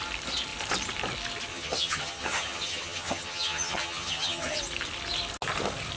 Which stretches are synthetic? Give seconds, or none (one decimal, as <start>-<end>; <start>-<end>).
1.5-4.6